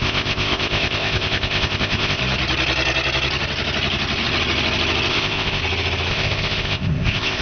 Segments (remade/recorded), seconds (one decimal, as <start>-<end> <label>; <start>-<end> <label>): 0.0-2.2 remade; 2.2-5.1 recorded; 5.1-5.6 remade; 5.6-6.1 recorded; 6.1-7.4 remade